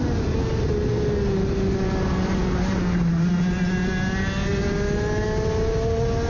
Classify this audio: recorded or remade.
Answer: recorded